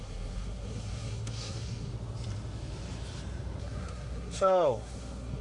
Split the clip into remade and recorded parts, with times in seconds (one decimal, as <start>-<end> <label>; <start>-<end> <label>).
0.0-1.9 remade; 1.9-3.6 recorded; 3.6-5.4 remade